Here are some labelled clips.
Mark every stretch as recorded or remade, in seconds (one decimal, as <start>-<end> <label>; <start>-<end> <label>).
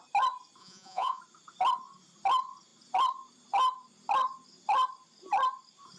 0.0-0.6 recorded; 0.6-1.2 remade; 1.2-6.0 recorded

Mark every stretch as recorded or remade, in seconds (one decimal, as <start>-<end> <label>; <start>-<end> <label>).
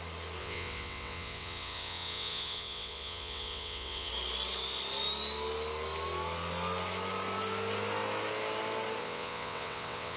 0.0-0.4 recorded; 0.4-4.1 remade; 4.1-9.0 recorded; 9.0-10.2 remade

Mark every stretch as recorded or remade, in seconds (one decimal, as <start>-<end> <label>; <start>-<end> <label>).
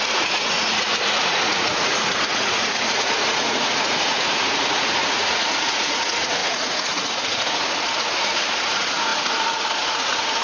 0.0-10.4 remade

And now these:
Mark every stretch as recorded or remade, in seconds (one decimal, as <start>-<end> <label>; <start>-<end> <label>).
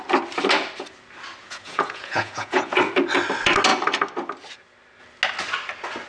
0.0-1.4 recorded; 1.4-2.8 remade; 2.8-6.1 recorded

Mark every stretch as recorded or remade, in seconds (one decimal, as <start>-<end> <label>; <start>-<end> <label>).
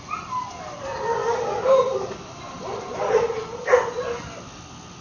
0.0-1.2 recorded; 1.2-4.2 remade; 4.2-5.0 recorded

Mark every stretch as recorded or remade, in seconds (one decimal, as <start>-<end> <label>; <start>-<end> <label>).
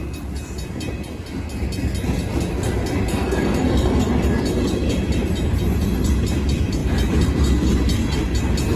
0.0-3.1 recorded; 3.1-4.1 remade; 4.1-8.8 recorded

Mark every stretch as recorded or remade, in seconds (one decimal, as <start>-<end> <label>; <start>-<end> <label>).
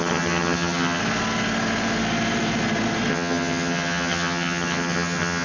0.0-1.0 remade; 1.0-3.1 recorded; 3.1-5.4 remade